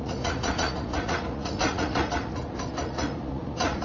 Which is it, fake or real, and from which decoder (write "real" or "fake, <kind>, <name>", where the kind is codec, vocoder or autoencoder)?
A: fake, vocoder, Vocos